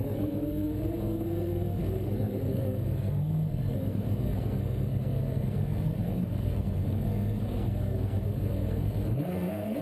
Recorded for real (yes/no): no